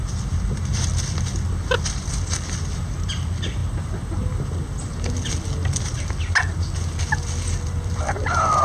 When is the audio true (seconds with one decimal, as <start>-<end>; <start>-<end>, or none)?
0.0-8.6